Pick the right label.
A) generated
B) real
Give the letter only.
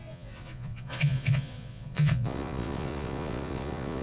A